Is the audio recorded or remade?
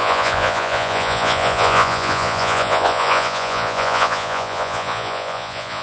remade